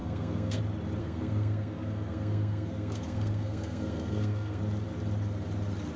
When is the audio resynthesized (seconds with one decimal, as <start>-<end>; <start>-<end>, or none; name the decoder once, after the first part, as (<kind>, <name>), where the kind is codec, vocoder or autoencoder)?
0.0-0.6 (codec, SNAC); 1.0-4.6